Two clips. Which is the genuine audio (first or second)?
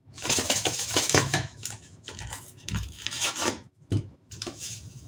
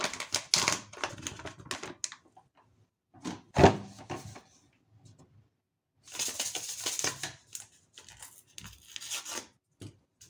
second